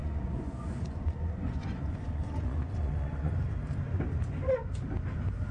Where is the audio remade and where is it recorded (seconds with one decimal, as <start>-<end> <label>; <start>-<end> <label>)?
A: 0.0-3.3 remade; 3.3-5.5 recorded